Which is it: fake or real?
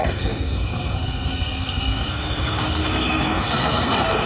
fake